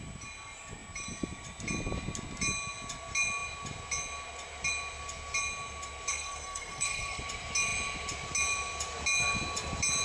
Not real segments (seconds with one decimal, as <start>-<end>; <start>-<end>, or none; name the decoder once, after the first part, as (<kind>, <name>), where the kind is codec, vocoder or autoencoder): 6.1-7.2 (codec, SNAC)

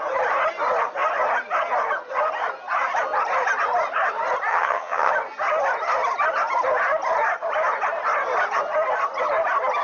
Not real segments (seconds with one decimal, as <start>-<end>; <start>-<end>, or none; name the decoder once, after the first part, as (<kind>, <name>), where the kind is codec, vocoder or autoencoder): 4.5-5.1 (vocoder, HiFi-GAN)